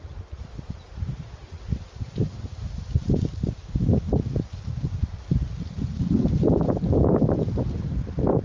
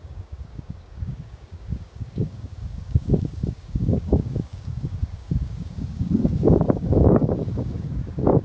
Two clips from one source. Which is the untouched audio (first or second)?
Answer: first